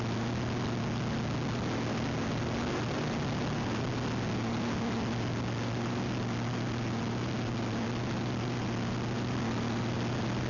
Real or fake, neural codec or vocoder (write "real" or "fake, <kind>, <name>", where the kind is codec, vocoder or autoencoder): real